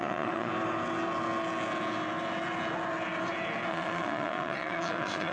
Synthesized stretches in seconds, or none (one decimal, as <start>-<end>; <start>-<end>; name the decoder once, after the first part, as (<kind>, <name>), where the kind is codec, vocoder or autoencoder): 0.0-0.5 (vocoder, Vocos); 3.7-5.3